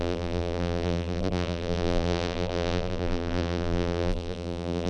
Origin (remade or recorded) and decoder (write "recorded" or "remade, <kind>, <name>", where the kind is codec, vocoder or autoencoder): remade, vocoder, BigVGAN v2